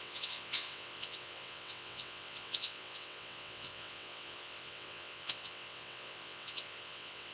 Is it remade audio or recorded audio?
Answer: remade